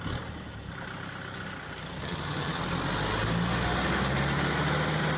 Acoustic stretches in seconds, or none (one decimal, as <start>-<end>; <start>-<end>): 0.0-2.0; 2.6-5.2